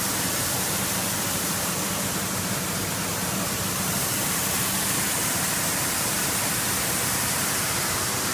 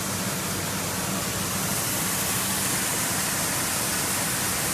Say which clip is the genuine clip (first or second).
second